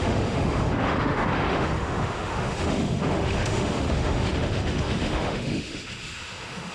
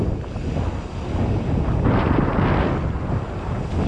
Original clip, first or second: second